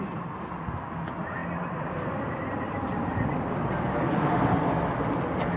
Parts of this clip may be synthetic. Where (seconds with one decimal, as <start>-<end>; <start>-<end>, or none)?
none